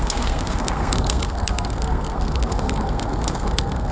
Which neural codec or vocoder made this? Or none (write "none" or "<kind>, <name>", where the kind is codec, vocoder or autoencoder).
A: codec, SNAC